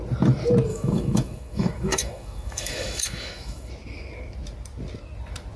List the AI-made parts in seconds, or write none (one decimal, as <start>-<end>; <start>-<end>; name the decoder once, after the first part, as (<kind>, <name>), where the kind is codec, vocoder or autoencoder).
0.7-3.7 (autoencoder, DAC-VAE)

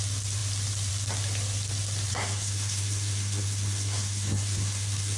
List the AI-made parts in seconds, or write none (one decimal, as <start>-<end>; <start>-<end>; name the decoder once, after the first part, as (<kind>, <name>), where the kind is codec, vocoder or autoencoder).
2.1-5.2 (codec, SNAC)